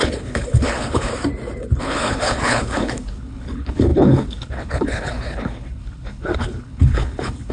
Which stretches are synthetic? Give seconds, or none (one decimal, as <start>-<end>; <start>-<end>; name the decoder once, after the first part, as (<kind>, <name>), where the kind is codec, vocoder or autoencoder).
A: 0.0-1.1 (codec, HILCodec); 1.8-7.5